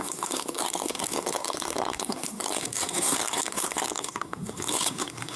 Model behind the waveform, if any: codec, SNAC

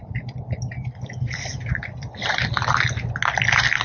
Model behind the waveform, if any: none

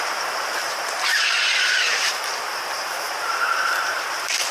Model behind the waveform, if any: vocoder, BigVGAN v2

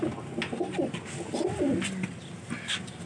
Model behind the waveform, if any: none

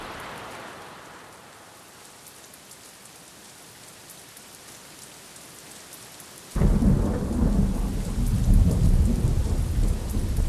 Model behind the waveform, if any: none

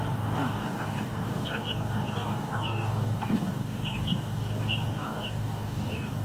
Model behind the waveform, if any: codec, DAC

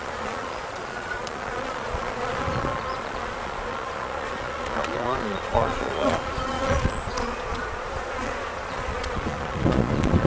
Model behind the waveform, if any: vocoder, Vocos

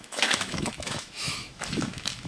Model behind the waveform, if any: autoencoder, DAC-VAE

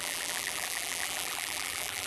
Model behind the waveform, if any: vocoder, BigVGAN v2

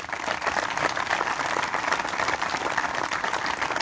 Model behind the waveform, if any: vocoder, BigVGAN v2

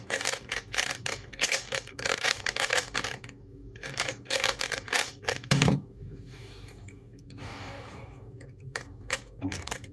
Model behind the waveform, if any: codec, DAC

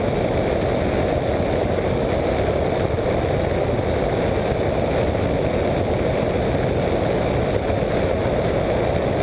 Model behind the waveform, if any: none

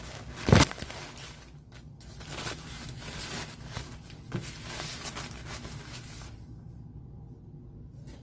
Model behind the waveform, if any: none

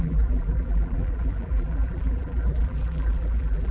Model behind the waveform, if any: vocoder, BigVGAN v2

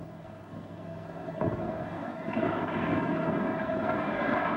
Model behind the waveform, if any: codec, SNAC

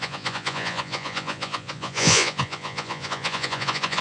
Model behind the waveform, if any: vocoder, Vocos